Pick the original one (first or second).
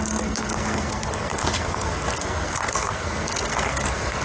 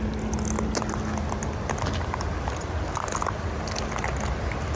second